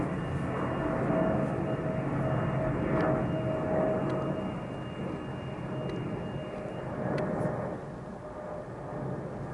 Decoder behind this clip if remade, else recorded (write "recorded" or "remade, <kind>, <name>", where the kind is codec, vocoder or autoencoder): recorded